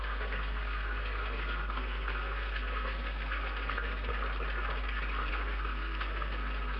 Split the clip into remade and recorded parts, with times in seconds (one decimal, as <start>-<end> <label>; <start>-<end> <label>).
0.0-4.1 remade; 4.1-5.3 recorded; 5.3-6.8 remade